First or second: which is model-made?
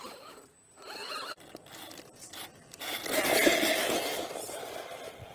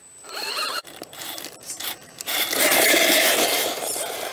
second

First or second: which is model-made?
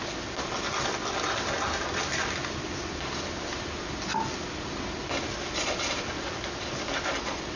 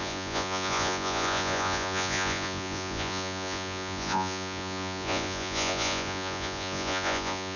second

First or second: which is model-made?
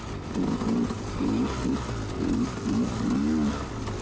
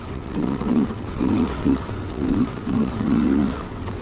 second